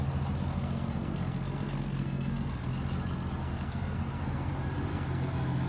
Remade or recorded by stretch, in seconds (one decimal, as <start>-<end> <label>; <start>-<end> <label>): 0.0-0.5 recorded; 0.5-2.7 remade; 2.7-3.4 recorded; 3.4-4.5 remade; 4.5-4.9 recorded; 4.9-5.7 remade